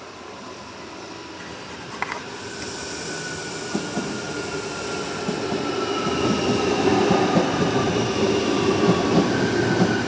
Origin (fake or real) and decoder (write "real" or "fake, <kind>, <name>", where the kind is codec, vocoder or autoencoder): real